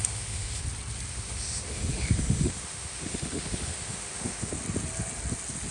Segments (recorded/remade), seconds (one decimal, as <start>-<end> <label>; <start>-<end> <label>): 0.0-0.6 remade; 0.6-1.1 recorded; 1.1-4.5 remade; 4.5-5.7 recorded